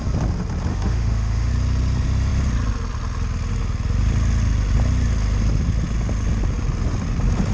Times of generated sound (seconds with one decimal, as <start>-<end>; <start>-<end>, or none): 0.7-1.5